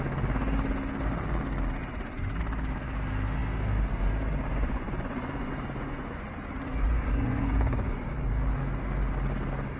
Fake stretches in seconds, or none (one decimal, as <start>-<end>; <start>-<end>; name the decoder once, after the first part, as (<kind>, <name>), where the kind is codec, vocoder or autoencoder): 1.8-2.4 (vocoder, Vocos); 4.5-8.1